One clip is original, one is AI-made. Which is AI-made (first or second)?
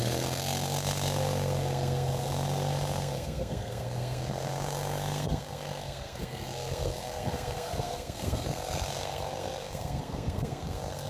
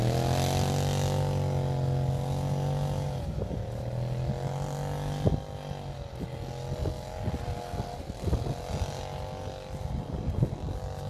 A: first